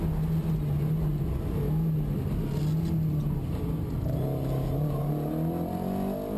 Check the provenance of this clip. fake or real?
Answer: real